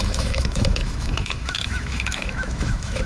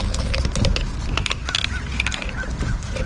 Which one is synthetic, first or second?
first